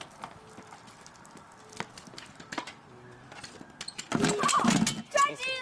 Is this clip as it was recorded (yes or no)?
yes